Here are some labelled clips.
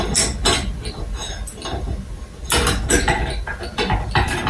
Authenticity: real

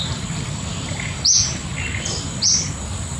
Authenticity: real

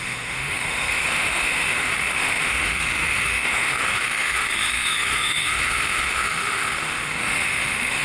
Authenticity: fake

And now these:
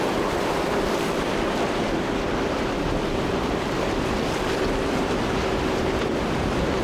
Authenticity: real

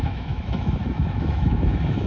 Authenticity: fake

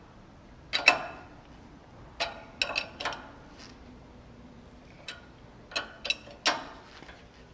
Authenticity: real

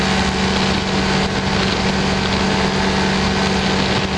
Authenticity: real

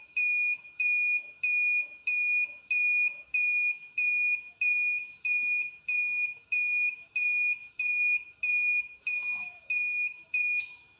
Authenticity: fake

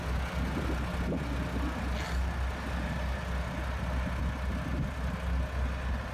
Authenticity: real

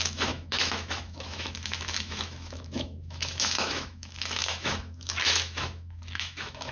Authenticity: fake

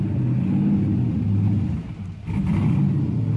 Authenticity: real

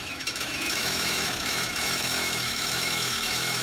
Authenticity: fake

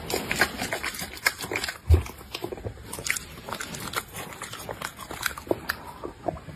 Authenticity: real